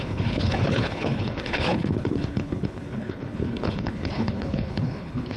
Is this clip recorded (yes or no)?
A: no